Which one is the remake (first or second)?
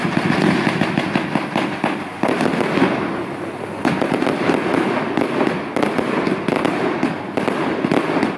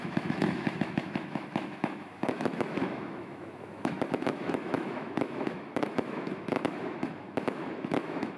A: second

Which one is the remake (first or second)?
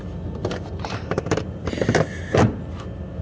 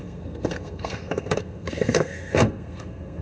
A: second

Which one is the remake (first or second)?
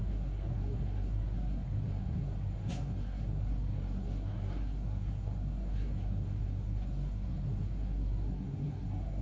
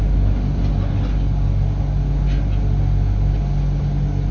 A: first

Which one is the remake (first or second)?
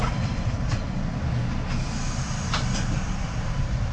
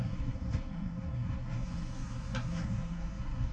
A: second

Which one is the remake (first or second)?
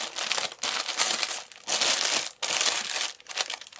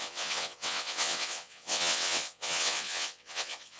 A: second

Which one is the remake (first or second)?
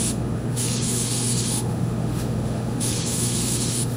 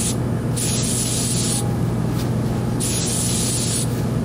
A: first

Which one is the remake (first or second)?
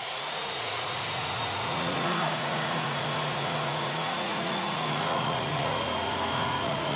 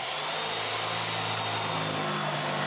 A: first